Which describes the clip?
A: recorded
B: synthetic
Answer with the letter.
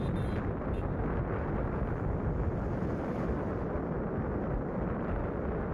A